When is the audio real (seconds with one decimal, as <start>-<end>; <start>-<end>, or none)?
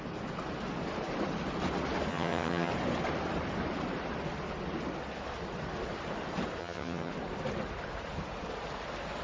0.0-2.1; 2.7-6.6; 7.1-9.2